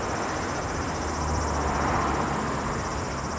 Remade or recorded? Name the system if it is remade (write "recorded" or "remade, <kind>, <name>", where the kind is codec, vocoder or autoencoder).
recorded